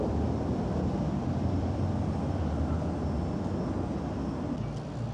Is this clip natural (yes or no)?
yes